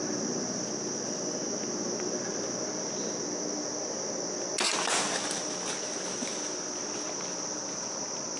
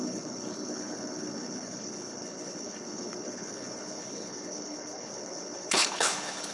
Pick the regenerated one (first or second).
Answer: second